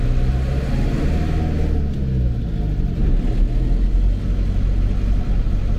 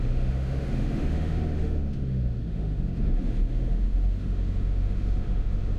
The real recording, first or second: first